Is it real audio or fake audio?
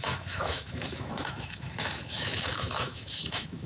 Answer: fake